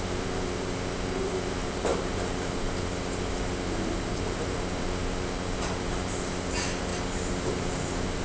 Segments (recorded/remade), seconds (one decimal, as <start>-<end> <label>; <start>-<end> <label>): 0.0-8.2 remade